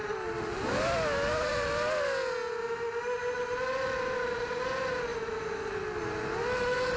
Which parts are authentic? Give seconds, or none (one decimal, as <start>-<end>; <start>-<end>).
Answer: 0.0-7.0